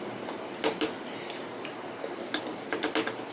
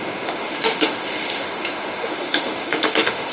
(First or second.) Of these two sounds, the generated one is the second